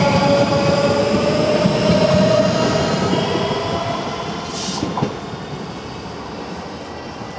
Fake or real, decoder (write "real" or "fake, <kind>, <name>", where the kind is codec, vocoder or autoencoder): real